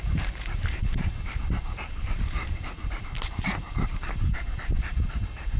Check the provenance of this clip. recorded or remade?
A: remade